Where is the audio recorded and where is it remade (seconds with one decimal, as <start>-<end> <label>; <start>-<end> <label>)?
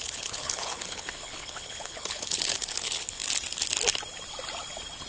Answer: 0.0-3.2 remade; 3.2-5.1 recorded